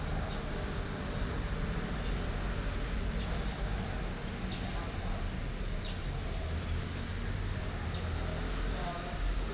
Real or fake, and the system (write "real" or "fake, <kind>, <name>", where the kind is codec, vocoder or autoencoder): real